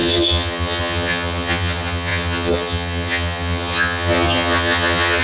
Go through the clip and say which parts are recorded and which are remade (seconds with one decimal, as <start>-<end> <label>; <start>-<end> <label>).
0.0-5.2 remade